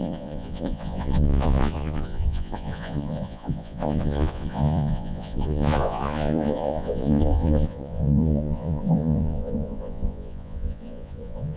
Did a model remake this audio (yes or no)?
yes